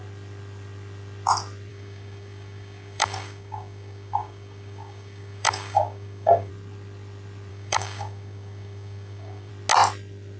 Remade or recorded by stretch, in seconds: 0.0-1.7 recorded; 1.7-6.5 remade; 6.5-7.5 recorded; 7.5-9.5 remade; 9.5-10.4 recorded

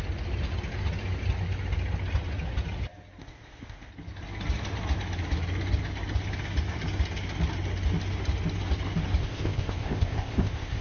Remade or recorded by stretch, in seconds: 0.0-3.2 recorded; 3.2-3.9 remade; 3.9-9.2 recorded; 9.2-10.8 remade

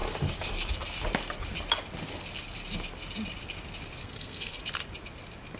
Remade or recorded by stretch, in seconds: 0.0-4.0 recorded; 4.0-4.6 remade; 4.6-5.6 recorded

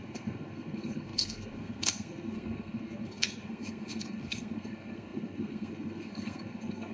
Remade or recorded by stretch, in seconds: 0.0-6.9 remade

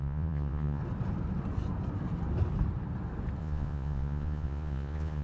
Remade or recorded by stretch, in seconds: 0.0-0.8 remade; 0.8-3.4 recorded; 3.4-5.2 remade